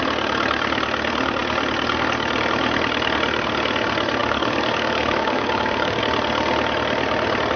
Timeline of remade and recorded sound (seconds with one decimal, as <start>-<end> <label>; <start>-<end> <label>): 0.0-4.2 recorded; 4.2-6.0 remade; 6.0-7.6 recorded